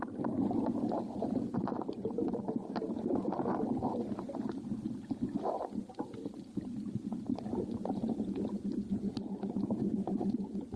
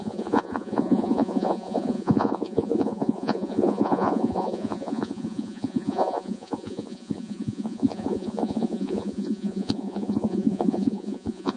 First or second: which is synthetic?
second